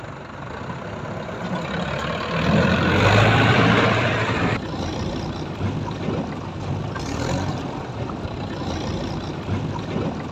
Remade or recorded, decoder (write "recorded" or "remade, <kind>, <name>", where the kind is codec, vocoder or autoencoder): remade, vocoder, BigVGAN v2